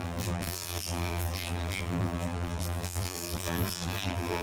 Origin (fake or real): fake